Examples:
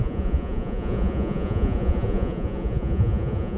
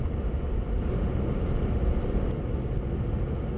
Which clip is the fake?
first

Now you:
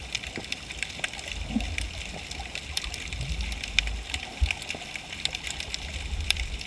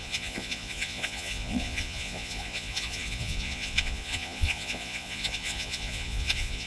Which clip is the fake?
second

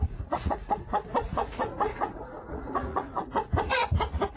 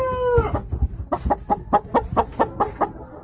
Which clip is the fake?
first